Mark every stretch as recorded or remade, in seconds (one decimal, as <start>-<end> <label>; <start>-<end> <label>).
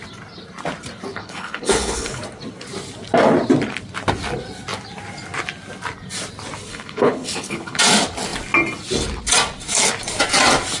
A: 0.0-1.1 recorded; 1.1-2.2 remade; 2.2-6.7 recorded; 6.7-7.8 remade; 7.8-10.8 recorded